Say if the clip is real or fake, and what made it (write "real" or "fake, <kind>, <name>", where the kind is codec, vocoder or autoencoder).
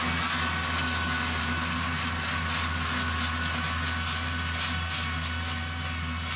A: real